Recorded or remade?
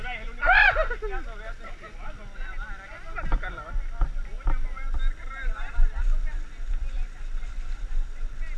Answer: recorded